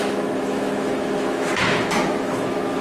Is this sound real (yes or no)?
no